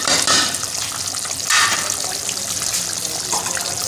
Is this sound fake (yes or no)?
no